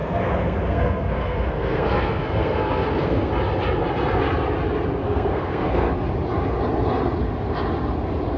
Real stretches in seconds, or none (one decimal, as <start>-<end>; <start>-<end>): 3.3-5.0; 5.9-8.4